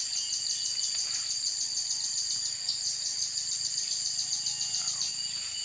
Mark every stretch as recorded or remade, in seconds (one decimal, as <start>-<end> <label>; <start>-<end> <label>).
0.0-5.6 recorded